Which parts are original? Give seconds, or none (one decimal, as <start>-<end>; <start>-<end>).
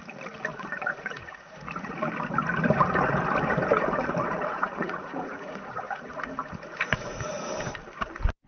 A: 0.0-0.5; 2.1-4.5; 7.4-8.5